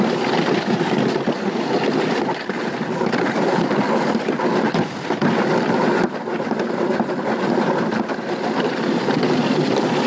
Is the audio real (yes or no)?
yes